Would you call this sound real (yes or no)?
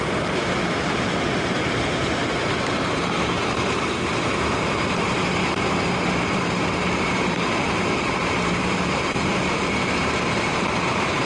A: no